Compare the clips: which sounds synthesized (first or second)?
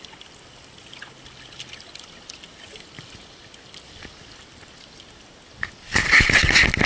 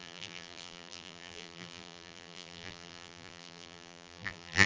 second